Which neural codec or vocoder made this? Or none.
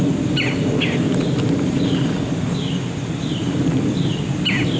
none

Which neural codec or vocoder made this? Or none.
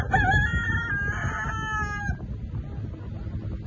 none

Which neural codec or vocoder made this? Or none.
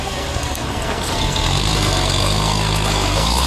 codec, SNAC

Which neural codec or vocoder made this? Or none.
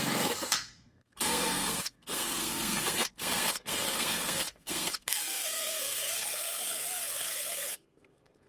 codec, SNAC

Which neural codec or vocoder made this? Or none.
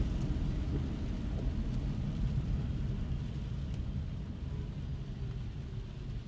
none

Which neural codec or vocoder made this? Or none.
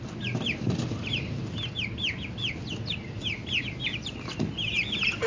none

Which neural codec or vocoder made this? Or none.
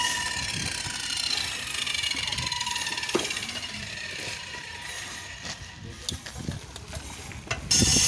none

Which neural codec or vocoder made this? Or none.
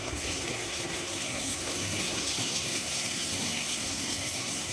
codec, SNAC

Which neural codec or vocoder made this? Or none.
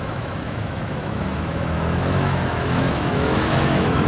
autoencoder, DAC-VAE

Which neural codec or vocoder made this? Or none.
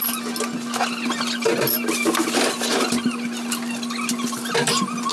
none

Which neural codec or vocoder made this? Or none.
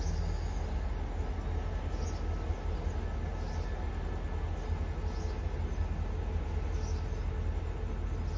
none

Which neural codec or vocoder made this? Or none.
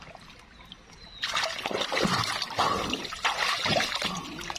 none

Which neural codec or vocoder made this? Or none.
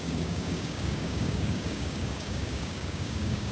codec, DAC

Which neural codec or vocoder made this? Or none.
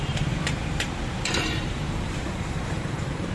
vocoder, BigVGAN v2